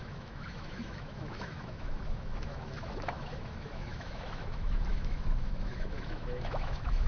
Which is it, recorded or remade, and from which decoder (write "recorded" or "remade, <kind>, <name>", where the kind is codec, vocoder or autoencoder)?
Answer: remade, autoencoder, DAC-VAE